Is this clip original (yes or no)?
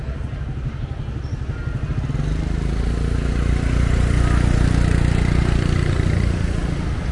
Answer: yes